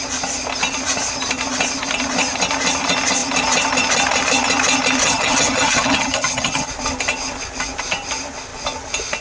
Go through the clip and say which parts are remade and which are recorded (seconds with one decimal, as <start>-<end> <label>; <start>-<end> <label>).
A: 0.0-5.0 recorded; 5.0-6.7 remade; 6.7-9.2 recorded